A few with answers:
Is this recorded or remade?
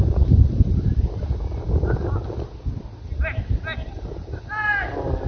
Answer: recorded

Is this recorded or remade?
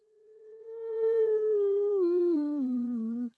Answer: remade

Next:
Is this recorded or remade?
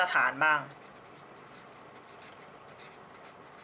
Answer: recorded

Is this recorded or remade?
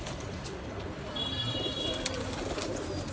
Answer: recorded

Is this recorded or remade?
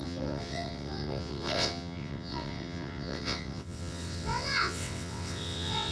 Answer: remade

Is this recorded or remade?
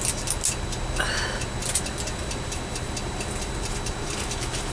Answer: recorded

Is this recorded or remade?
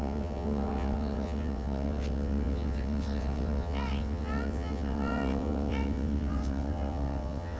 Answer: remade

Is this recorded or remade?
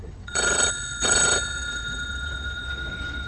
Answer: remade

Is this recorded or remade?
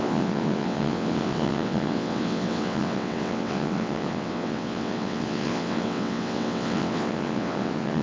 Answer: remade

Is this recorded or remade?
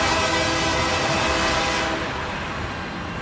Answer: recorded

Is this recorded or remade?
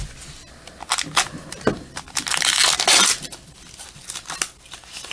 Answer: recorded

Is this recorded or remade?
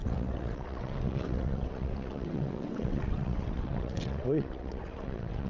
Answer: remade